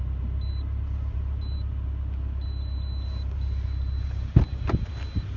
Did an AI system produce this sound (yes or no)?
no